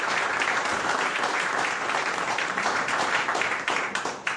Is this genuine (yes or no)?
no